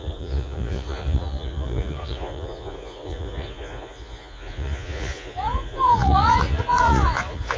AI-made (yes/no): yes